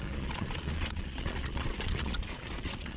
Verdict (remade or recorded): remade